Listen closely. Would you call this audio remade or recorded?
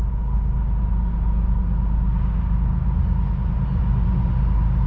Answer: recorded